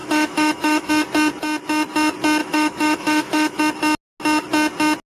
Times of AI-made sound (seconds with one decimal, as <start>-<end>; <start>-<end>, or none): 0.0-0.9; 2.4-3.6